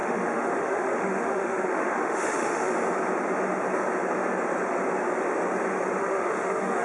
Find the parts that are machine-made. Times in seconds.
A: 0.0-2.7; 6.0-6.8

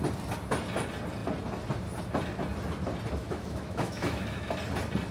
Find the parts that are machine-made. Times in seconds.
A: 3.2-4.5